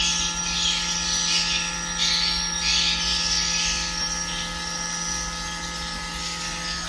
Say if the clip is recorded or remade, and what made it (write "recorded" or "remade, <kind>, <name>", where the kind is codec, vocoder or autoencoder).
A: recorded